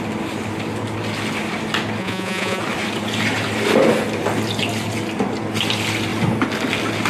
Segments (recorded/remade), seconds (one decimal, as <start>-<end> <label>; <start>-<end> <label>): 0.0-2.0 recorded; 2.0-2.6 remade; 2.6-7.1 recorded